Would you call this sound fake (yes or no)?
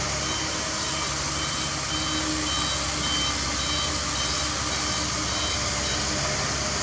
no